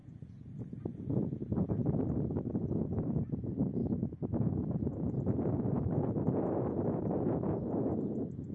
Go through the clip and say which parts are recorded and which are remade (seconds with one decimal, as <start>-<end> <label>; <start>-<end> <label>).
0.0-8.5 recorded